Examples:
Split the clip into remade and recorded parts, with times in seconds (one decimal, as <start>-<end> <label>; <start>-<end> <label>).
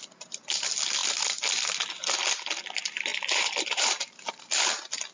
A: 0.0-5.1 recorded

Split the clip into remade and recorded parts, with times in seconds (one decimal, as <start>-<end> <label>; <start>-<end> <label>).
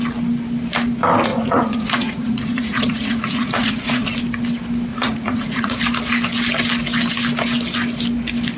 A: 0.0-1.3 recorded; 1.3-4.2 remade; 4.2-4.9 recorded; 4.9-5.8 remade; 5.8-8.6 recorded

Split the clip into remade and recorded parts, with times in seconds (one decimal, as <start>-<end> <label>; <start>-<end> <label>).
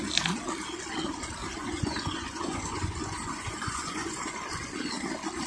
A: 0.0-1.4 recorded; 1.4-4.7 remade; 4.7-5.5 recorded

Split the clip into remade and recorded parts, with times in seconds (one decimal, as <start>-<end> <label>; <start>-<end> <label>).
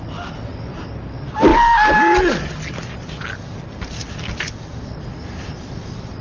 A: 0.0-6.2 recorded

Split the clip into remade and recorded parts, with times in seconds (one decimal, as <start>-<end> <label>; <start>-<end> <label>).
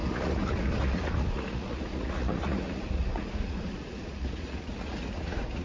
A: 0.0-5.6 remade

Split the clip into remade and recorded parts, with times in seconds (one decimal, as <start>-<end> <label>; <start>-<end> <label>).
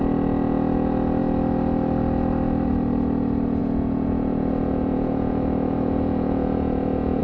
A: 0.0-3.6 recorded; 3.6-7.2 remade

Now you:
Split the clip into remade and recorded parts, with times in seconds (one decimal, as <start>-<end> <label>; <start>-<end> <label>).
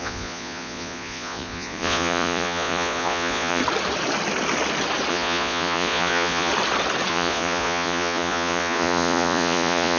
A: 0.0-3.6 remade; 3.6-5.1 recorded; 5.1-6.5 remade; 6.5-7.1 recorded; 7.1-10.0 remade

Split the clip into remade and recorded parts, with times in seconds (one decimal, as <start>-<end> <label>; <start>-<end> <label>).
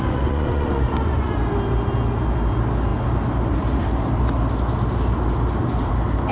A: 0.0-1.3 remade; 1.3-6.3 recorded